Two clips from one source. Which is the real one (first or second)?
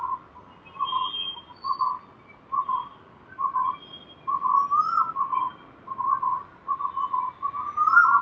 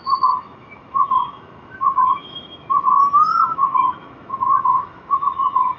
first